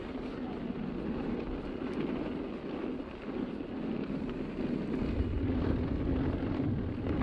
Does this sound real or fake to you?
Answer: real